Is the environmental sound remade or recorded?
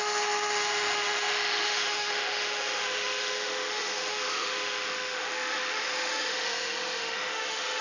remade